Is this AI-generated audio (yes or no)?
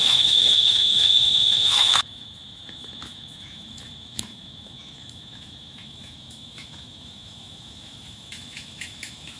yes